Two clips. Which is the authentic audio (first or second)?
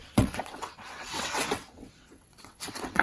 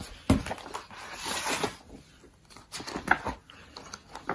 second